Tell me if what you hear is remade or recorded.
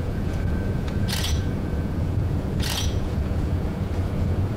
remade